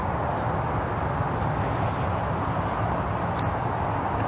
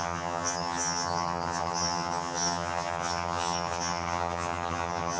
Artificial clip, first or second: second